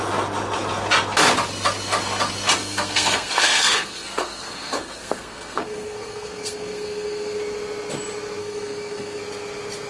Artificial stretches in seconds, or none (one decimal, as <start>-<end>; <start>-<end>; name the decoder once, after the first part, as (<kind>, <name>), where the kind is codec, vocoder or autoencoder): 2.6-7.4 (codec, SNAC); 8.4-9.2